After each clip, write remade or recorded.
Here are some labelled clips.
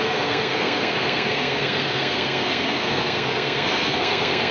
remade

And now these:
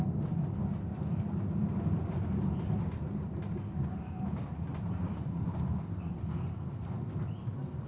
recorded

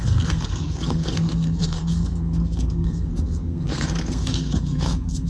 remade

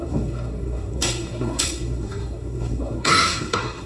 remade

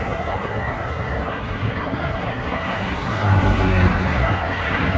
remade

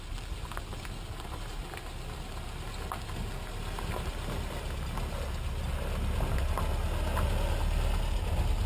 recorded